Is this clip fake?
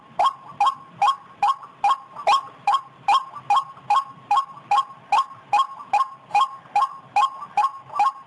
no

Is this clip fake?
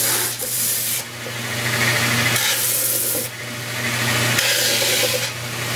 no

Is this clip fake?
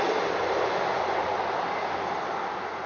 no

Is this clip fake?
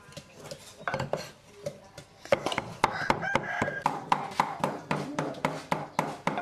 yes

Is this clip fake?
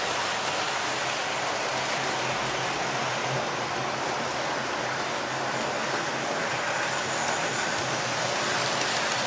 no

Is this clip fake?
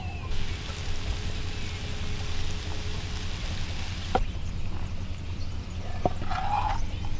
no